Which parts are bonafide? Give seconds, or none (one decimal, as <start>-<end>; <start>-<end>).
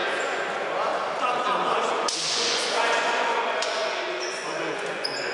0.9-1.9